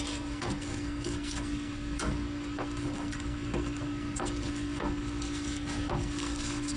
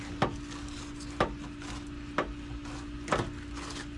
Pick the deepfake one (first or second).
first